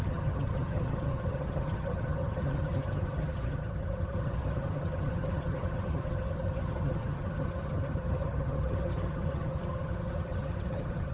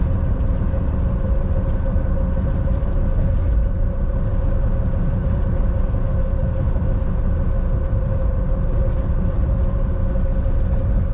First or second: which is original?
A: second